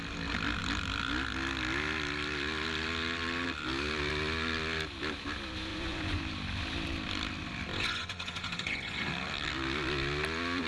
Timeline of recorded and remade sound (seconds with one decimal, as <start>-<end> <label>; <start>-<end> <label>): 0.0-5.7 recorded; 5.7-6.2 remade; 6.2-7.7 recorded; 7.7-9.1 remade; 9.1-10.7 recorded